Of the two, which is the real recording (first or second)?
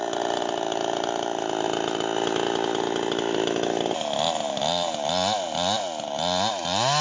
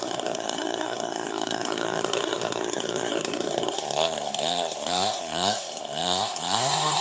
first